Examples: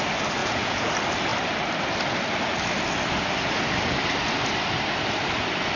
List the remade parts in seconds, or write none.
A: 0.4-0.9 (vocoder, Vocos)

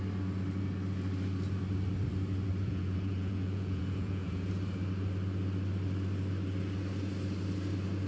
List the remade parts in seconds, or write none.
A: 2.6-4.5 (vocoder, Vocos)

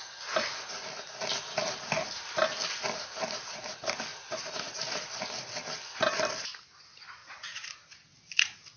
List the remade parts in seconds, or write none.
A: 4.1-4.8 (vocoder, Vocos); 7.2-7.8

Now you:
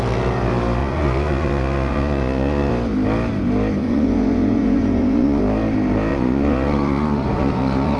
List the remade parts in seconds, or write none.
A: 0.8-2.7 (vocoder, Vocos); 3.8-5.4; 6.1-8.0